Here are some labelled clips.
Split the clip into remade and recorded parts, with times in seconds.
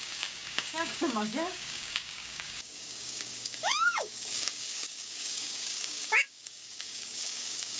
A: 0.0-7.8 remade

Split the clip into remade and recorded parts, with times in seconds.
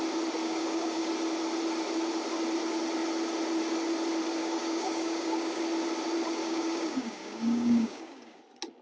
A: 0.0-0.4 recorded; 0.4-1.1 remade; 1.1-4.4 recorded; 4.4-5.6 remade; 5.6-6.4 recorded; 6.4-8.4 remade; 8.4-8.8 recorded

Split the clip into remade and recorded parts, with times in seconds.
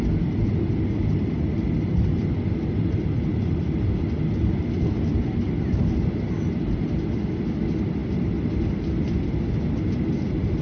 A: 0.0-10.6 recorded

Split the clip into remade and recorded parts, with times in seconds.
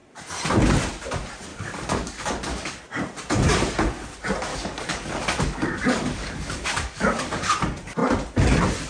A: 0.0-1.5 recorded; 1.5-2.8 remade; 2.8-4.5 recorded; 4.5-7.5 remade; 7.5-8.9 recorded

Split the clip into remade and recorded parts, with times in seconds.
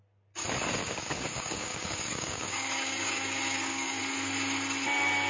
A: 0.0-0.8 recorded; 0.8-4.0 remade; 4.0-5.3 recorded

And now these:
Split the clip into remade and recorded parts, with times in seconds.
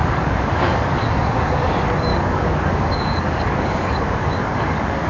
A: 0.0-1.7 remade; 1.7-2.1 recorded; 2.1-5.1 remade